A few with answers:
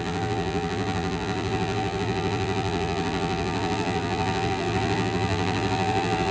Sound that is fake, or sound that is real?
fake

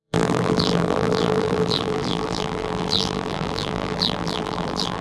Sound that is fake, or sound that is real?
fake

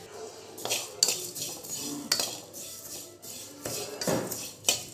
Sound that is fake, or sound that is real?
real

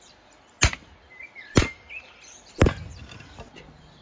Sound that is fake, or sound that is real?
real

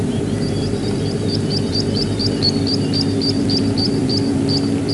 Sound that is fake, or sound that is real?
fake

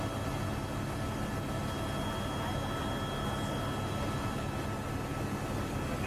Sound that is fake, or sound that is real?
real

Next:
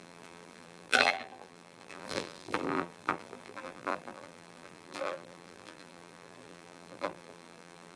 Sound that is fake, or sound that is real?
fake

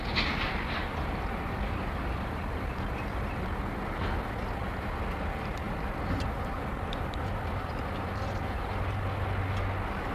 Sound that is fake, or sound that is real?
real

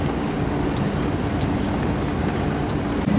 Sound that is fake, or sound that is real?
real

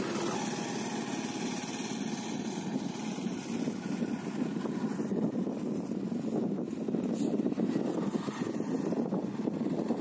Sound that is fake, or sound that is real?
real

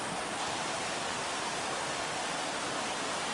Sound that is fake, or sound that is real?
fake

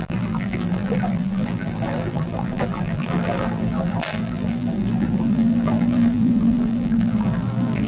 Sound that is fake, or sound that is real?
fake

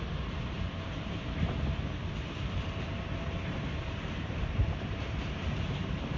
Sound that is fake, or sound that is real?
fake